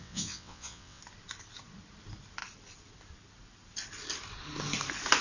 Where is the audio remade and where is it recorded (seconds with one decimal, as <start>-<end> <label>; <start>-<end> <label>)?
0.0-1.0 remade; 1.0-5.2 recorded